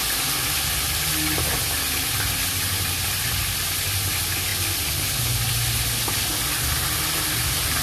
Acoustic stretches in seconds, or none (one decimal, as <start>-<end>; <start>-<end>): 0.0-7.8